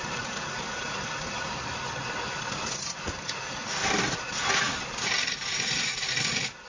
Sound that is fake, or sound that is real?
real